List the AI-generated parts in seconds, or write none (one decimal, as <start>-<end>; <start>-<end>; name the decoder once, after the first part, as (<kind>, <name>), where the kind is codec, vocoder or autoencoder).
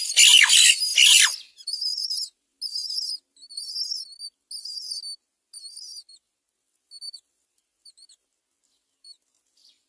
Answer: none